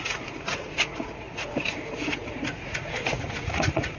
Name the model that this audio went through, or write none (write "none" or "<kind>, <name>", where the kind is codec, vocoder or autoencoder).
vocoder, Vocos